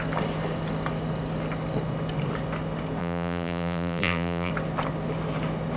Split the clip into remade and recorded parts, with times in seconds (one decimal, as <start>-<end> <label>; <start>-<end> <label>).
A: 0.0-3.0 recorded; 3.0-4.5 remade; 4.5-5.8 recorded